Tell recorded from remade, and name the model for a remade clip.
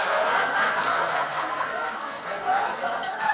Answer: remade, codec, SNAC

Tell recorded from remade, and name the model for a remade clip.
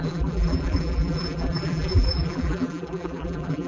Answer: remade, vocoder, BigVGAN v2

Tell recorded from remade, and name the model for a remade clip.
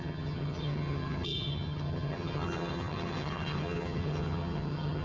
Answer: remade, vocoder, HiFi-GAN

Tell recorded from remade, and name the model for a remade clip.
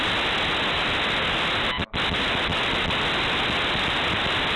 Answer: recorded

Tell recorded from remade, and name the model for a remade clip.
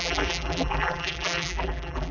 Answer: remade, vocoder, BigVGAN v2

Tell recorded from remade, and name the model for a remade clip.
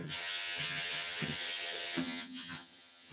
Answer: remade, vocoder, HiFi-GAN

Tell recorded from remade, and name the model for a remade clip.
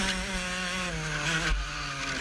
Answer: recorded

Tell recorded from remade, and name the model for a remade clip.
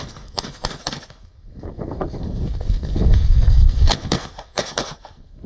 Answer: remade, codec, SNAC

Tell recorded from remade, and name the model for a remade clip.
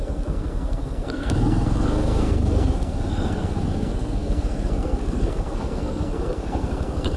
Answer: remade, codec, SNAC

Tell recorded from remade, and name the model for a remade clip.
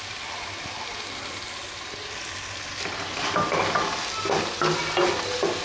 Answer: recorded